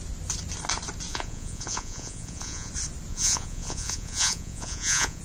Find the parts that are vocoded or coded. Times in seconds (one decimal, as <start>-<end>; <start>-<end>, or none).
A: 1.1-2.7; 3.1-5.2